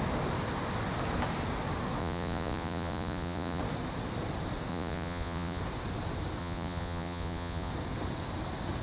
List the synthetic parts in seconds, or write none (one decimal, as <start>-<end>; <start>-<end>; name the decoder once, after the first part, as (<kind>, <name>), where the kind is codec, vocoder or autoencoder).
2.0-3.6 (vocoder, Vocos); 4.7-5.6; 6.4-7.7